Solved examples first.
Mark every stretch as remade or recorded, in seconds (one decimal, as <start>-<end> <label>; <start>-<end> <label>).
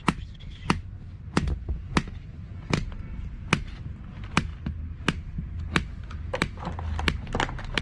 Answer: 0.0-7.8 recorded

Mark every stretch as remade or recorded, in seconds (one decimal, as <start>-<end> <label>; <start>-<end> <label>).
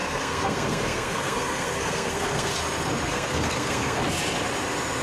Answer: 0.0-2.5 remade; 2.5-3.1 recorded; 3.1-4.0 remade; 4.0-5.0 recorded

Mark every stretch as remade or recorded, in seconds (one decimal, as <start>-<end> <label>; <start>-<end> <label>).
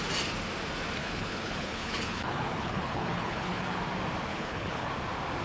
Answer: 0.0-1.0 recorded; 1.0-3.8 remade; 3.8-4.3 recorded; 4.3-4.9 remade; 4.9-5.4 recorded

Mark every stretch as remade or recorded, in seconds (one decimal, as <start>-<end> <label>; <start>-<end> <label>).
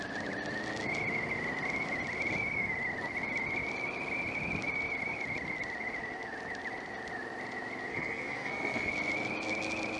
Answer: 0.0-7.9 recorded; 7.9-8.9 remade; 8.9-10.0 recorded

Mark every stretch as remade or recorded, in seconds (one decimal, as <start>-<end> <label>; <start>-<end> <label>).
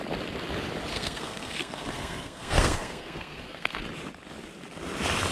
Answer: 0.0-0.9 recorded; 0.9-3.8 remade; 3.8-5.3 recorded